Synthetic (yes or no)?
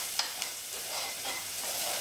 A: yes